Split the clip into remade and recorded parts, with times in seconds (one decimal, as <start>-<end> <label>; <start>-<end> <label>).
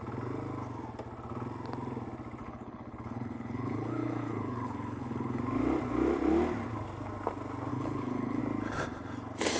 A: 0.0-2.4 recorded; 2.4-5.4 remade; 5.4-7.7 recorded; 7.7-8.4 remade; 8.4-9.6 recorded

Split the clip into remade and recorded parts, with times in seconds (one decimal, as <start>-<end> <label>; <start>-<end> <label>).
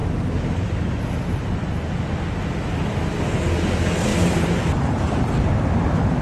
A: 0.0-4.1 recorded; 4.1-5.2 remade; 5.2-6.2 recorded